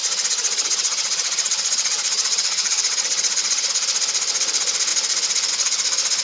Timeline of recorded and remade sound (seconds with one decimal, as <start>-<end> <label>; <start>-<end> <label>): 0.0-3.7 remade; 3.7-6.2 recorded